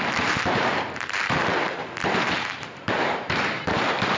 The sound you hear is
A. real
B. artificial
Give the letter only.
B